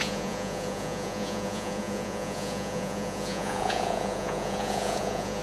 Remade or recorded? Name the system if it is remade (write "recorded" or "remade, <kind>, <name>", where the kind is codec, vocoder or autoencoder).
remade, vocoder, Vocos